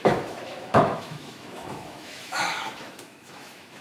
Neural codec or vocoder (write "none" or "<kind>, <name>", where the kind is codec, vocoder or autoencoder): autoencoder, DAC-VAE